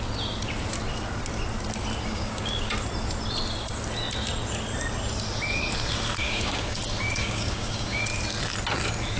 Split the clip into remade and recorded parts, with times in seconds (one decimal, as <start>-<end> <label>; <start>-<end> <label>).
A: 0.0-2.1 recorded; 2.1-2.7 remade; 2.7-6.2 recorded; 6.2-6.8 remade; 6.8-7.2 recorded; 7.2-8.0 remade; 8.0-9.2 recorded